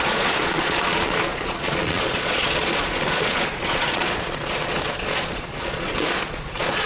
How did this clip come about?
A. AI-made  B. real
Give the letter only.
A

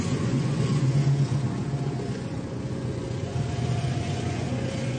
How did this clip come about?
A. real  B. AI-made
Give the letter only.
B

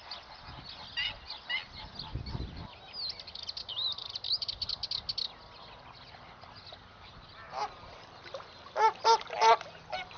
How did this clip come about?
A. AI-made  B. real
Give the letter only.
B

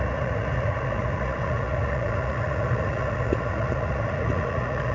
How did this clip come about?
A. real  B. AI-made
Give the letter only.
B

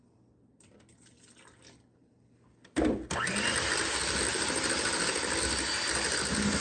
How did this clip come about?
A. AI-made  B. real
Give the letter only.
B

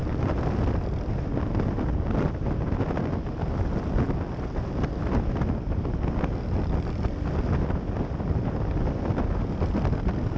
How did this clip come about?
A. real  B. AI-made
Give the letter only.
A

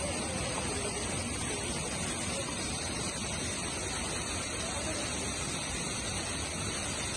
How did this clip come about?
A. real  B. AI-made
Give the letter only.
A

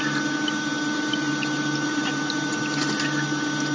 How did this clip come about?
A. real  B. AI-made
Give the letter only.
A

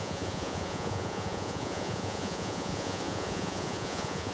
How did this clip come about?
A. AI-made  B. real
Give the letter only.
A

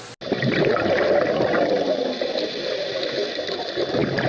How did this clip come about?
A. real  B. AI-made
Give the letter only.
A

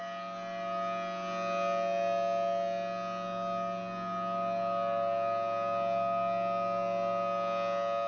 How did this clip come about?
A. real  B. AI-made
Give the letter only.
A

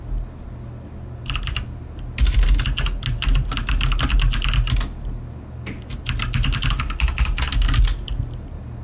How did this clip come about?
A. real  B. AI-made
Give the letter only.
A